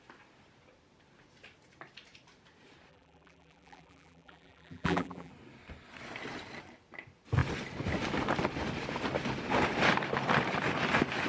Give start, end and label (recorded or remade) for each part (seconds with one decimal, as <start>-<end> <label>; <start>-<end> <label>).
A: 0.0-2.9 recorded; 2.9-5.3 remade; 5.3-11.3 recorded